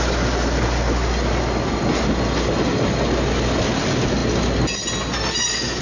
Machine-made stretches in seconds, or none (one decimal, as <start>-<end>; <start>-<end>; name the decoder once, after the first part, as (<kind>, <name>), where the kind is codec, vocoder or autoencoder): none